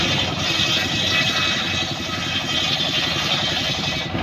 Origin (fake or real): real